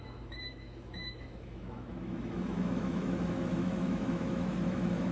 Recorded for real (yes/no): no